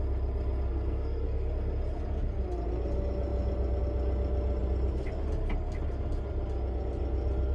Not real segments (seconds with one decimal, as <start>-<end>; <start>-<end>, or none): 0.7-1.5